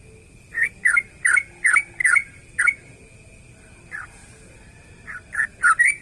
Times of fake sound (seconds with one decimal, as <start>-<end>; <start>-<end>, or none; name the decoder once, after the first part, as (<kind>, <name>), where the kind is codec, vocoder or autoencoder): none